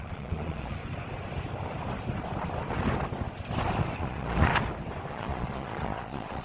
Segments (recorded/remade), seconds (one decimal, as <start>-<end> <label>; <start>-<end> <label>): 0.0-0.8 remade; 0.8-4.0 recorded; 4.0-4.5 remade; 4.5-5.1 recorded; 5.1-6.4 remade